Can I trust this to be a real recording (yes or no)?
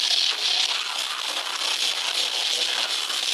yes